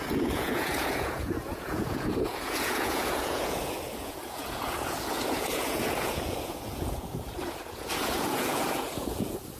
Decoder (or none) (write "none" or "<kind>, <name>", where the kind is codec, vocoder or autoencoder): vocoder, Vocos